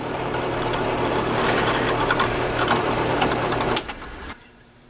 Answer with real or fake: fake